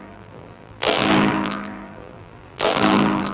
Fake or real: fake